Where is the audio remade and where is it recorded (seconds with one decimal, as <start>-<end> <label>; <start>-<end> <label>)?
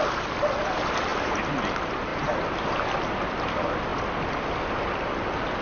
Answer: 0.0-2.1 remade; 2.1-3.3 recorded; 3.3-3.9 remade; 3.9-5.6 recorded